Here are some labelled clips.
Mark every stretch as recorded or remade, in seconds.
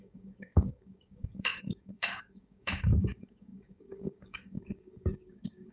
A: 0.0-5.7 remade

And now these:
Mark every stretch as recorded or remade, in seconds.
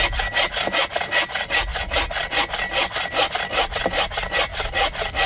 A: 0.0-4.5 recorded; 4.5-5.3 remade